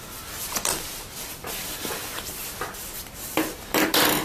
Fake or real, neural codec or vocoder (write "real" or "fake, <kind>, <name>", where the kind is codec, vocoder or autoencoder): fake, vocoder, BigVGAN v2